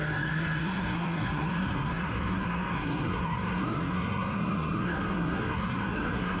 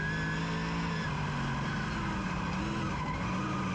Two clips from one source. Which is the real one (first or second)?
second